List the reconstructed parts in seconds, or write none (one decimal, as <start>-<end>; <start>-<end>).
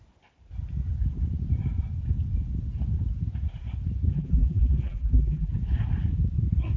4.1-5.5